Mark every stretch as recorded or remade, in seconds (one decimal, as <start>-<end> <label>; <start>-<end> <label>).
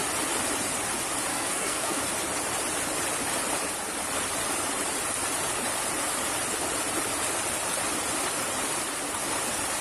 0.0-1.3 recorded; 1.3-2.0 remade; 2.0-9.8 recorded